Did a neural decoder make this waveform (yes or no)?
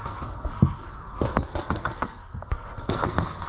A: yes